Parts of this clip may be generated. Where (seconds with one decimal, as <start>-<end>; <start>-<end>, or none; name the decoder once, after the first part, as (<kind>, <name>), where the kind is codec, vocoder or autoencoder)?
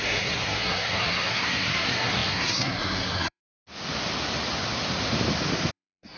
0.0-3.4 (codec, SNAC); 5.7-6.2